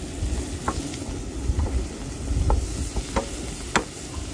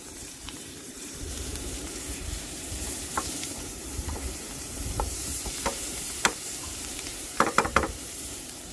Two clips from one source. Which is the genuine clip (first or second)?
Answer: first